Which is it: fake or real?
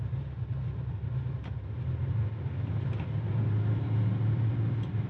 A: real